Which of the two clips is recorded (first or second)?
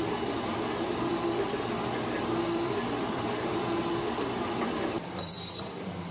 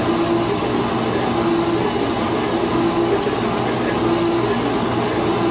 second